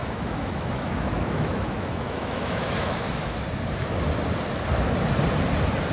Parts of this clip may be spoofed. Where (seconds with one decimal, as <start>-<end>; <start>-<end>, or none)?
0.0-3.4